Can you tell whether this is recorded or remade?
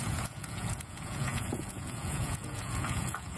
remade